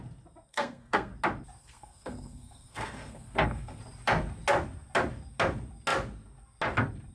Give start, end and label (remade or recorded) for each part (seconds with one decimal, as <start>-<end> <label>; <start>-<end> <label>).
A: 0.0-0.5 recorded; 0.5-1.1 remade; 1.1-1.6 recorded; 1.6-3.8 remade; 3.8-7.1 recorded